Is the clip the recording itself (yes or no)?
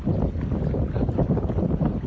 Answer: yes